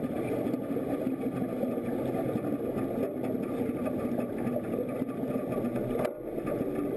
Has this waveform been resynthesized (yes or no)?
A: no